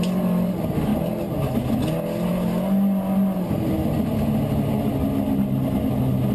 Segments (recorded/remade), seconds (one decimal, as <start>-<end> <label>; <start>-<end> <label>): 0.0-6.3 recorded